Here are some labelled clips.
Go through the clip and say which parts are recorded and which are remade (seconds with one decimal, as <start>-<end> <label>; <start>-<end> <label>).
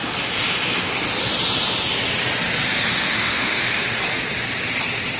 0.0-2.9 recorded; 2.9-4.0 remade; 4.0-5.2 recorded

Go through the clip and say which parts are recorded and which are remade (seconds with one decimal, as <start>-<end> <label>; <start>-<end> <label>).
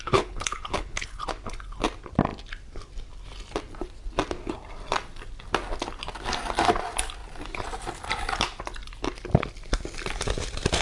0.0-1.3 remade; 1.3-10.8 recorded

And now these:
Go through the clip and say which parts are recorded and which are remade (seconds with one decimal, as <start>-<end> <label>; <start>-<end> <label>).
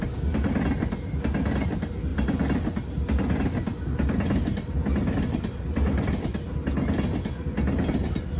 0.0-8.4 recorded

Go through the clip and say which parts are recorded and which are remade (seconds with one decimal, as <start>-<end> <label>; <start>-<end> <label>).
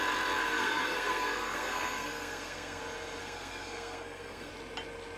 0.0-0.4 recorded; 0.4-2.8 remade; 2.8-3.2 recorded; 3.2-4.5 remade; 4.5-5.2 recorded